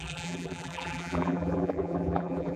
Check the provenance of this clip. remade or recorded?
remade